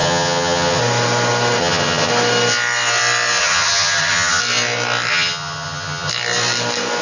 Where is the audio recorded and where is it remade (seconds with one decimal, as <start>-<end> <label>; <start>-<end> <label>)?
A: 0.0-0.8 remade; 0.8-1.6 recorded; 1.6-2.1 remade; 2.1-3.4 recorded; 3.4-4.4 remade; 4.4-5.1 recorded; 5.1-6.1 remade; 6.1-7.0 recorded